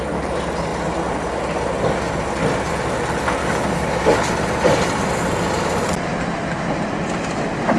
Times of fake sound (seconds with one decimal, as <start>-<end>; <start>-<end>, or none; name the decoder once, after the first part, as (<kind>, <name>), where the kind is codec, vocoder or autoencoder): 3.4-4.3 (codec, DAC)